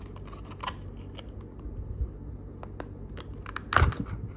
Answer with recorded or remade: recorded